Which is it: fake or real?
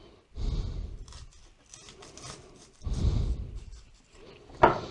real